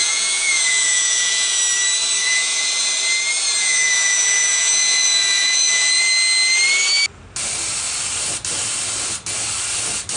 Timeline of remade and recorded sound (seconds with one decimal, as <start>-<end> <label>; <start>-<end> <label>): 0.0-1.6 remade; 1.6-2.2 recorded; 2.2-2.7 remade; 2.7-3.6 recorded; 3.6-6.0 remade; 6.0-10.2 recorded